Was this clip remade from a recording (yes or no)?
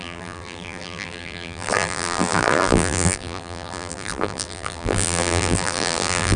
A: yes